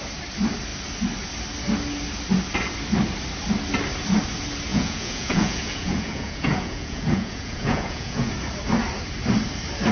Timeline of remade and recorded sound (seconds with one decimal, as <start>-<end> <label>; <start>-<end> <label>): 0.0-4.7 recorded; 4.7-8.3 remade; 8.3-9.9 recorded